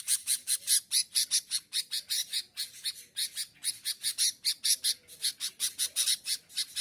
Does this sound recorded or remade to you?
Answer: recorded